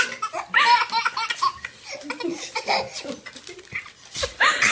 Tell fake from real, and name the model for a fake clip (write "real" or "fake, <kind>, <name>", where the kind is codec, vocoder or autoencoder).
real